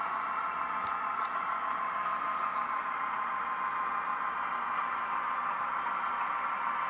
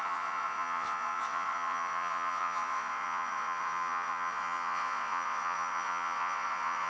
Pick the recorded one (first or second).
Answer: first